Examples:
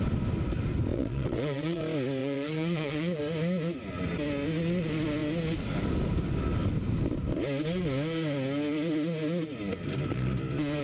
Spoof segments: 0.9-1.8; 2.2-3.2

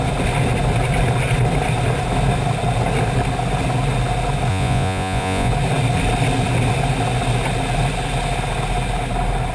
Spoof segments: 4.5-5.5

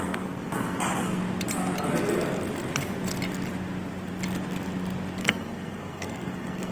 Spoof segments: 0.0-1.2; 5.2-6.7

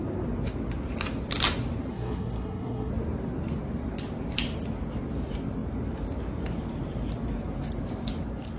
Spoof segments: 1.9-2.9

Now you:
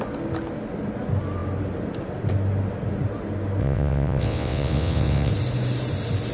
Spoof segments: 3.6-5.3